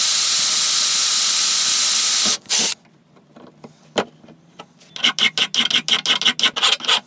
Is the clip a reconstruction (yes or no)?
no